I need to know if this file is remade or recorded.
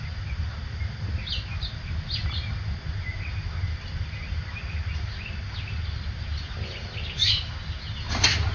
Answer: recorded